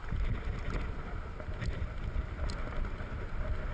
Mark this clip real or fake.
real